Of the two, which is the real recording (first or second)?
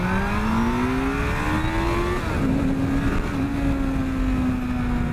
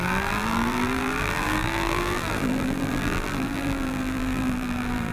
first